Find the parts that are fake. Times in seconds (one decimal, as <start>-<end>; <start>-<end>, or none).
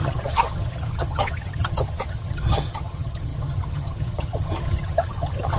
0.0-5.6